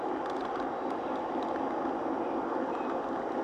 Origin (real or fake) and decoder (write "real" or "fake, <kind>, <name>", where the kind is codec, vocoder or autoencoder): real